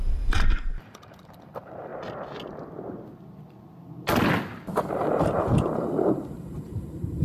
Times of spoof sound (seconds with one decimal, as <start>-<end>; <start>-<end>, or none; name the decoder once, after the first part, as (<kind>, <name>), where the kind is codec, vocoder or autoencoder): 0.0-1.9 (vocoder, BigVGAN v2); 4.9-7.2